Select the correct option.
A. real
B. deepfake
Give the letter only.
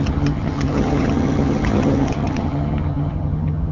B